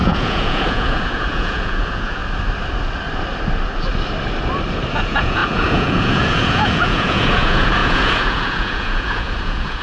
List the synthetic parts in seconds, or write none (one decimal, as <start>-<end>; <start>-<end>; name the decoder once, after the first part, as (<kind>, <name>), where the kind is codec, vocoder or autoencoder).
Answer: 0.0-2.2 (vocoder, Vocos); 4.9-9.8